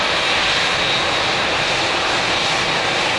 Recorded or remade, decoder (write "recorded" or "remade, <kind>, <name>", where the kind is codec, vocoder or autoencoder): recorded